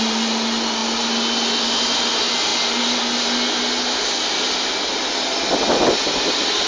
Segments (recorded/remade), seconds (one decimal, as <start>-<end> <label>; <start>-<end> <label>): 0.0-6.7 recorded

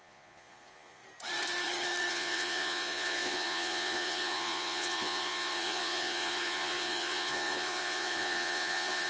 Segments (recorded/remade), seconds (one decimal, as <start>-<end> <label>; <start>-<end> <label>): 0.0-1.0 remade; 1.0-2.1 recorded; 2.1-9.1 remade

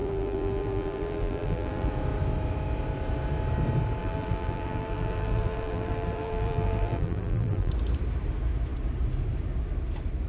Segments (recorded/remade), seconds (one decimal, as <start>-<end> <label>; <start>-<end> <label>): 0.0-1.9 remade; 1.9-4.0 recorded; 4.0-7.7 remade; 7.7-10.3 recorded